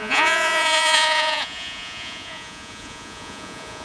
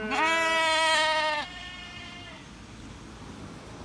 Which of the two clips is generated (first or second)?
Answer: first